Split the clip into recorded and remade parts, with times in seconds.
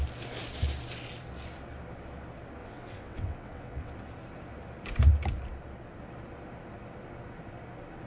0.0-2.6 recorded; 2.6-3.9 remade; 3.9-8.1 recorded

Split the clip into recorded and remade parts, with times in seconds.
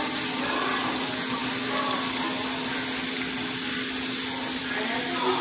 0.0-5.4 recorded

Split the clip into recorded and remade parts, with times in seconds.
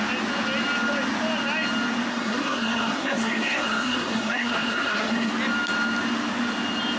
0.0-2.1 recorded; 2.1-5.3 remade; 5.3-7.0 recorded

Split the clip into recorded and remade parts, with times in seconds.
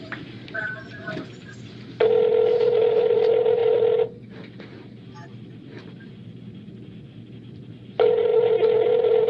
0.0-1.0 remade; 1.0-3.1 recorded; 3.1-3.6 remade; 3.6-4.6 recorded; 4.6-8.3 remade; 8.3-8.9 recorded; 8.9-9.3 remade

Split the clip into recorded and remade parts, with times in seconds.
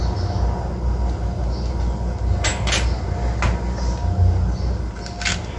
0.0-5.6 recorded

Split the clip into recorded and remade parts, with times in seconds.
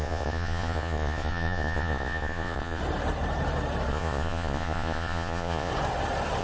0.0-2.8 remade; 2.8-3.9 recorded; 3.9-5.7 remade; 5.7-6.4 recorded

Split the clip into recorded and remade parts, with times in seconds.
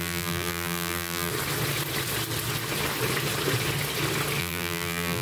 0.0-1.3 remade; 1.3-4.4 recorded; 4.4-5.2 remade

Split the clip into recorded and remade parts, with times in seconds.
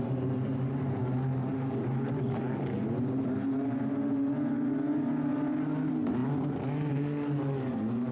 0.0-8.1 recorded